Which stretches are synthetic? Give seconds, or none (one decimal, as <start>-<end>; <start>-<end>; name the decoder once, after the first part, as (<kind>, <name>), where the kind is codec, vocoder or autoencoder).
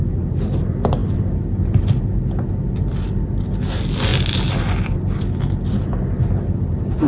none